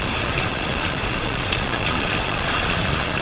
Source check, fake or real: fake